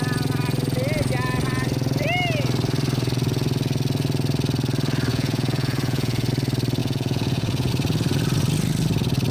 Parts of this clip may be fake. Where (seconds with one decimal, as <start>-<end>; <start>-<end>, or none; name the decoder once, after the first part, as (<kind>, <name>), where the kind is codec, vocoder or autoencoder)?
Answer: 5.1-6.3 (vocoder, Vocos); 6.8-7.7